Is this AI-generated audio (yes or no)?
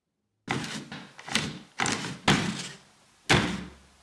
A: no